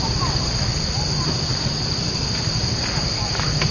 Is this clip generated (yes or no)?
no